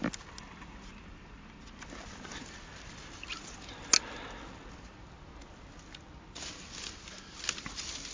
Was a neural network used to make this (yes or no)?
no